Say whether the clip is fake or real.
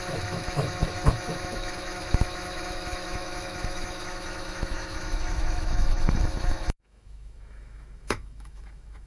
fake